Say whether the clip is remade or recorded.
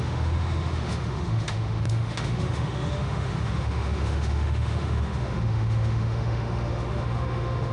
remade